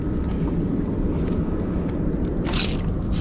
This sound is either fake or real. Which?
real